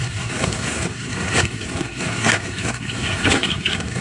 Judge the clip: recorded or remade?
remade